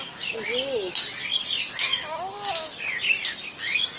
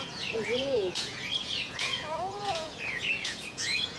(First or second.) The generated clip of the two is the second